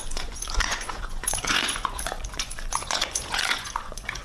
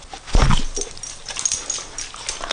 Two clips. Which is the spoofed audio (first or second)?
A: first